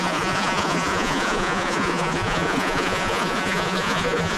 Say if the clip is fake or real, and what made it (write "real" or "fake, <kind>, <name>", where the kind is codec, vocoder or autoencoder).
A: fake, vocoder, Vocos